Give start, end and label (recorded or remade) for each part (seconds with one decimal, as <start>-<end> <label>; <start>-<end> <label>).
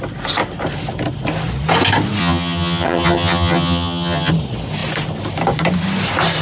0.0-2.2 recorded; 2.2-4.3 remade; 4.3-6.4 recorded